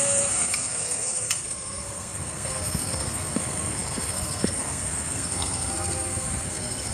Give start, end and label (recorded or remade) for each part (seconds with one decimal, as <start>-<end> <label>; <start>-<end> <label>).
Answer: 0.0-6.9 remade